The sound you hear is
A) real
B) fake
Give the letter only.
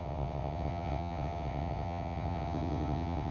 B